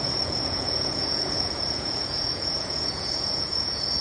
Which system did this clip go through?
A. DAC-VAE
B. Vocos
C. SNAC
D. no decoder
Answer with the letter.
B